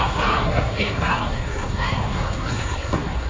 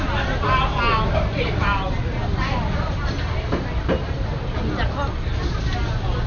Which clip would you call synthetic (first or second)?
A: first